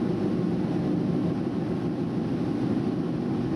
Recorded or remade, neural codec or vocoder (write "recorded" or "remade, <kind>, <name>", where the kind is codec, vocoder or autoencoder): recorded